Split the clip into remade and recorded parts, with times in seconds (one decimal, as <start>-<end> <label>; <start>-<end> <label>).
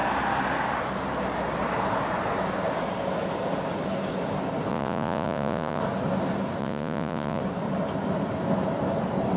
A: 0.0-4.7 recorded; 4.7-5.8 remade; 5.8-6.6 recorded; 6.6-7.4 remade; 7.4-9.4 recorded